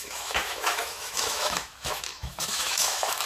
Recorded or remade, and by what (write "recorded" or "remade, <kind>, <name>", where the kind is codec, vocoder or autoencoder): remade, autoencoder, DAC-VAE